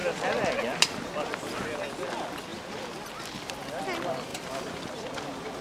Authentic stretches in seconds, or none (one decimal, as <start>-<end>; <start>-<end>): 0.6-2.5; 3.4-5.6